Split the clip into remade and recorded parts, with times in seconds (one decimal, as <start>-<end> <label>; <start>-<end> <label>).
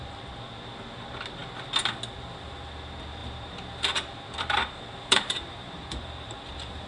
0.0-3.2 recorded; 3.2-6.9 remade